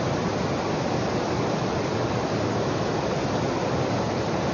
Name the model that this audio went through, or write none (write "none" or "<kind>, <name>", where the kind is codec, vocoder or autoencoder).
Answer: none